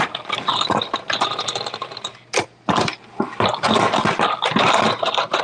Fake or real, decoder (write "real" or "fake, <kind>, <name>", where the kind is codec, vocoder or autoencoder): real